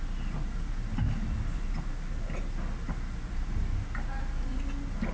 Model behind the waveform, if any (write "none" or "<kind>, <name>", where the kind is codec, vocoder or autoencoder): none